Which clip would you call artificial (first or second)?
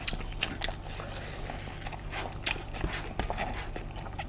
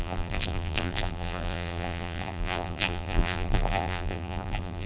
second